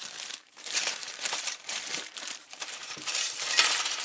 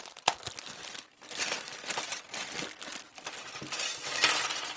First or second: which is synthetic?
first